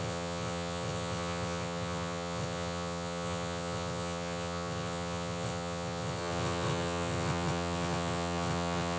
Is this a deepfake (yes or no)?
yes